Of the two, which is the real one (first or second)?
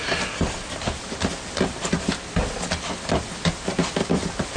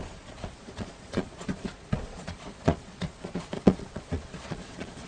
first